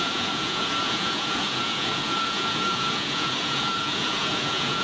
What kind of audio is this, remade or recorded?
remade